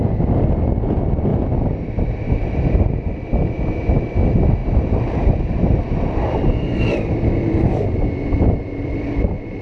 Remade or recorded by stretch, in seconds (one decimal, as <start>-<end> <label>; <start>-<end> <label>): 0.0-4.6 recorded; 4.6-8.9 remade; 8.9-9.6 recorded